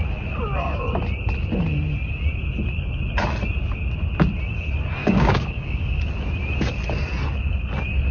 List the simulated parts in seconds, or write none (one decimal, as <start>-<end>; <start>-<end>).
5.0-6.0